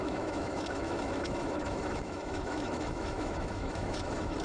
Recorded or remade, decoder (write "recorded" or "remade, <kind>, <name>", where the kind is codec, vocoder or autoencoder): remade, autoencoder, DAC-VAE